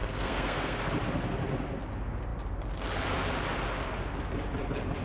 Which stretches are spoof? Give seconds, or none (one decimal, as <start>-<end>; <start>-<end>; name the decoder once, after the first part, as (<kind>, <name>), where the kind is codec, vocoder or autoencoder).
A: 0.0-0.8 (codec, SNAC)